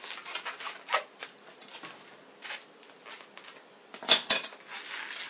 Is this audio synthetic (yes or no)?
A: no